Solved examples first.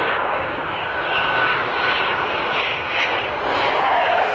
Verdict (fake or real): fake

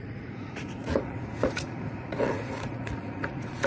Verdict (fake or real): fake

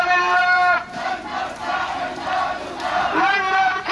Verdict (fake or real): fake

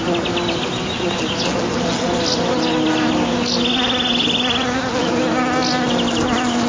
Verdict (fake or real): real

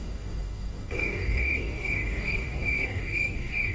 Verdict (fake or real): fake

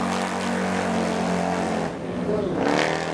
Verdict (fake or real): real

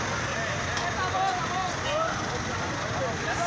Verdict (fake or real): real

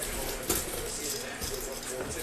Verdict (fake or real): real